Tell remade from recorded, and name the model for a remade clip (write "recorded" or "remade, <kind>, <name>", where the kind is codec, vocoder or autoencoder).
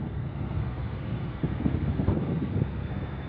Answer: remade, codec, SNAC